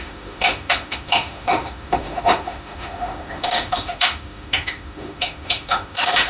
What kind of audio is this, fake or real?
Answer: fake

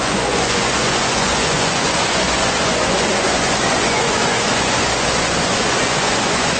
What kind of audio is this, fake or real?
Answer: fake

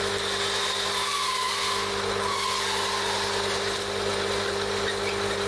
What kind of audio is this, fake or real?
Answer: real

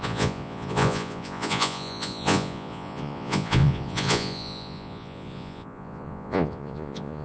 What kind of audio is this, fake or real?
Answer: fake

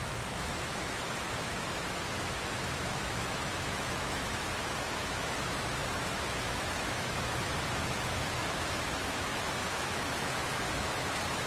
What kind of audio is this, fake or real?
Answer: fake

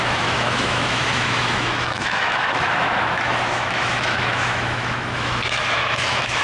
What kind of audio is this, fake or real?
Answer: fake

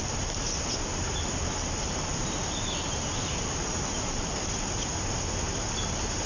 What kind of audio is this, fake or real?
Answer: real